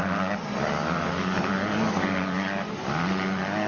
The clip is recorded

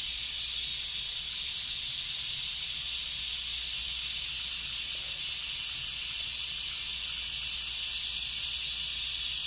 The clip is recorded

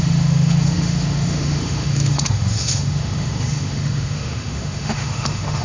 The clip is remade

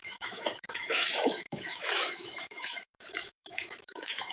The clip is remade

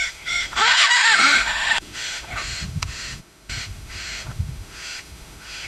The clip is remade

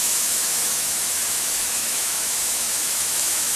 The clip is remade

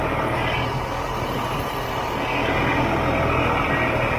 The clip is recorded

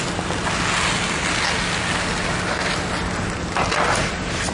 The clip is recorded